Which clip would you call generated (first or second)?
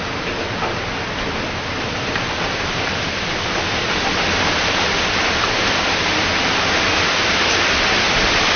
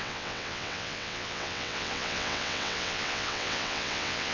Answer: second